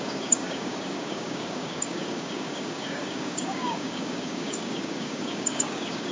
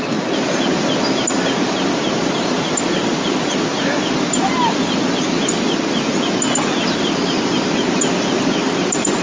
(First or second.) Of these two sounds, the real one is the second